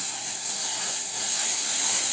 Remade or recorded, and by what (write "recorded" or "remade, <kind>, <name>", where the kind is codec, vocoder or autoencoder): remade, codec, SNAC